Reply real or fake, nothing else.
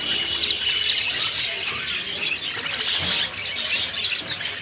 real